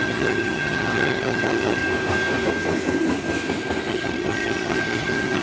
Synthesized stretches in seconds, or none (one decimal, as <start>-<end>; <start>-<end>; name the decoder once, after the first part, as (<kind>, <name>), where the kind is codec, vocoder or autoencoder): 0.0-1.8 (vocoder, HiFi-GAN); 3.9-5.4